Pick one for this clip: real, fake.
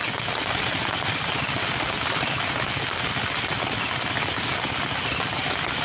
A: real